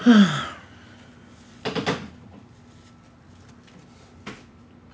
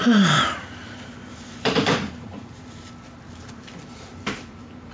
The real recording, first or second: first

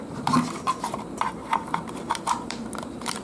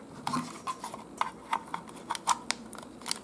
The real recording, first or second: second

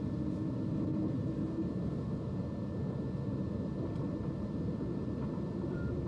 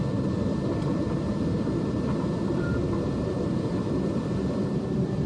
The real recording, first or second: first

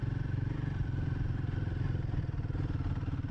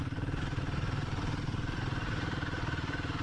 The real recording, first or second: first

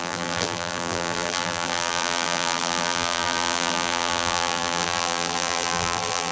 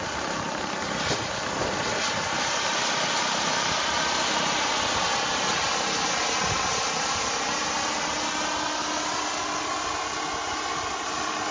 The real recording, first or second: second